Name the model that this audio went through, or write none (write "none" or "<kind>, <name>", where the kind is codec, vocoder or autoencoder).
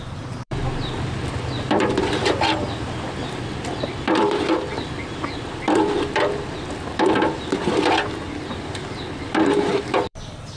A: vocoder, BigVGAN v2